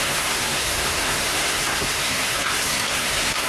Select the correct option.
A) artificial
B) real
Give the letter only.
A